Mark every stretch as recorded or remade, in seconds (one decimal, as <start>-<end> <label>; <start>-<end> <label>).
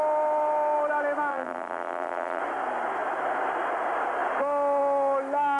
0.0-1.3 recorded; 1.3-2.4 remade; 2.4-5.6 recorded